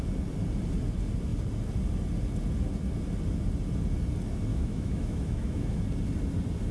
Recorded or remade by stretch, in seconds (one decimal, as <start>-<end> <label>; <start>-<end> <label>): 0.0-4.5 recorded; 4.5-5.8 remade; 5.8-6.7 recorded